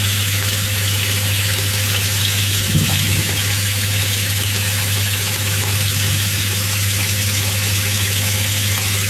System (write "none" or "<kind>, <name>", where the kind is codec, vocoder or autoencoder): autoencoder, DAC-VAE